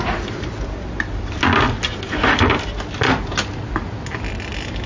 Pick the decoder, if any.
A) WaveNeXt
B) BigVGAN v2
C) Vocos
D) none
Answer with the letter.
D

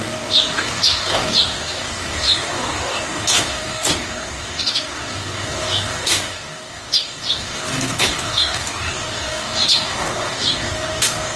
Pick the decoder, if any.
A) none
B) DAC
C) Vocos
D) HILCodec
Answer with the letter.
B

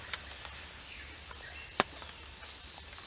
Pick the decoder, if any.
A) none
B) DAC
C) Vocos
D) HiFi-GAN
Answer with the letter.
A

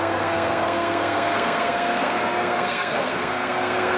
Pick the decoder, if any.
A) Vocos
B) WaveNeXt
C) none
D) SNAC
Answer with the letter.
D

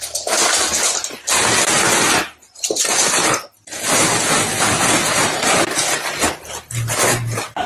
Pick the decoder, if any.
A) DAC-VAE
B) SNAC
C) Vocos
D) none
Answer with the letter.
D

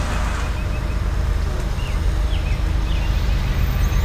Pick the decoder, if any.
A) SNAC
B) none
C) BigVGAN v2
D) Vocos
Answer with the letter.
B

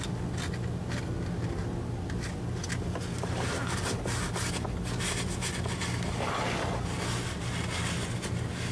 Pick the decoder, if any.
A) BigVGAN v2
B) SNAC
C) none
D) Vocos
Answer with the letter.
C